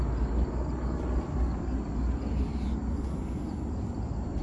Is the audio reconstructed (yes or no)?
no